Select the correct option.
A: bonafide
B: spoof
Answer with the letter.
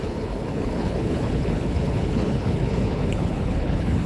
B